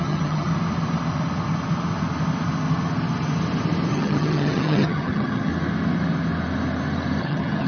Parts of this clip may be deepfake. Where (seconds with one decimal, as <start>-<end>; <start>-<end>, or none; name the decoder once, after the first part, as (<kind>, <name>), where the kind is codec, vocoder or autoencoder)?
0.0-0.5 (vocoder, HiFi-GAN); 3.9-5.5; 7.2-7.7